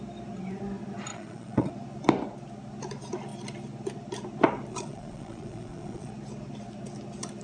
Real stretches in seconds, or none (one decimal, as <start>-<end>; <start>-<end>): 0.0-1.1; 1.7-4.7; 6.1-7.4